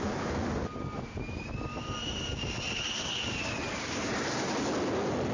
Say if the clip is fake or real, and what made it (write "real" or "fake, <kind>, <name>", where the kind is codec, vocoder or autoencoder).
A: real